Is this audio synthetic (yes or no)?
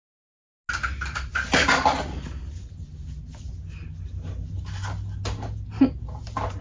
no